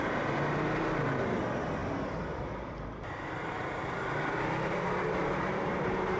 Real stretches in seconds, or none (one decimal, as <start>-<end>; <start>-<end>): 0.0-1.8; 5.5-6.2